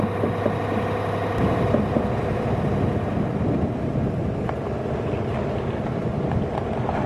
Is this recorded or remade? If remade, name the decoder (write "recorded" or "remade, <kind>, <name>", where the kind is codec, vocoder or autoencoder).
recorded